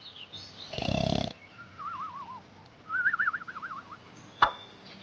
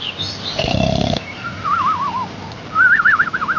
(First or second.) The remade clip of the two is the second